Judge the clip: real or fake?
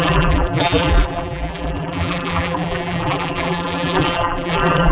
fake